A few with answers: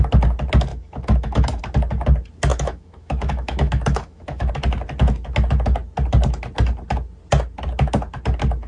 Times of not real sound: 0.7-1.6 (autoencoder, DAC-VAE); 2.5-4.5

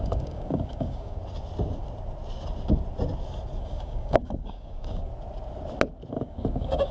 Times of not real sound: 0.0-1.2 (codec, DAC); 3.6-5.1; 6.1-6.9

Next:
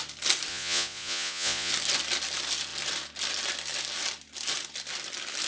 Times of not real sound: 0.5-1.7 (vocoder, Vocos)

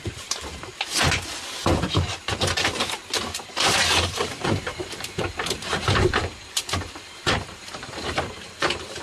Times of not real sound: 0.0-3.0 (vocoder, BigVGAN v2); 4.1-9.0